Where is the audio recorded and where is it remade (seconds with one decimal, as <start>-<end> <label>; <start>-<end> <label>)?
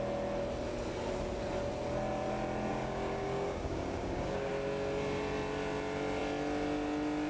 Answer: 0.0-2.7 recorded; 2.7-4.5 remade; 4.5-7.3 recorded